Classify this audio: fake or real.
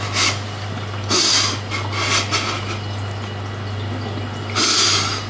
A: real